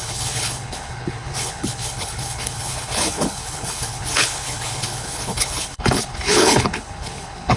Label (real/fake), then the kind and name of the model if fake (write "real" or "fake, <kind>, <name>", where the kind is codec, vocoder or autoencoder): fake, codec, HILCodec